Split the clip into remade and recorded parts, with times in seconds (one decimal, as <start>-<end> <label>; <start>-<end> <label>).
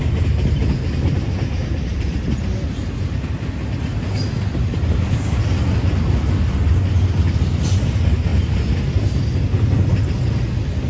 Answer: 0.0-10.9 recorded